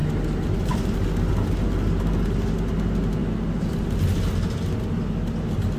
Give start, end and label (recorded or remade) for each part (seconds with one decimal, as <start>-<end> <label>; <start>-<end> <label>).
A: 0.0-5.8 recorded